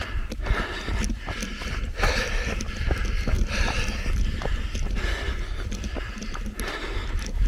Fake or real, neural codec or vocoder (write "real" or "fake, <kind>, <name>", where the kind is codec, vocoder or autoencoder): real